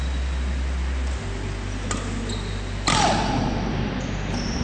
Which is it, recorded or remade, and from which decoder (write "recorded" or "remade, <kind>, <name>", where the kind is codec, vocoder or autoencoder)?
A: recorded